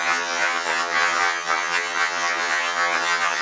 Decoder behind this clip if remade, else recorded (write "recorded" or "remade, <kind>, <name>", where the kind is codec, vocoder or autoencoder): remade, vocoder, HiFi-GAN